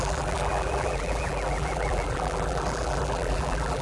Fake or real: fake